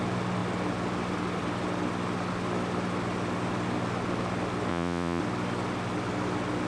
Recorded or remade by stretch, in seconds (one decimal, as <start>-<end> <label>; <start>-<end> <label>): 0.0-4.7 recorded; 4.7-5.2 remade; 5.2-6.7 recorded